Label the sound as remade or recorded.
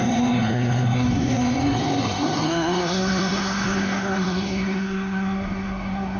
remade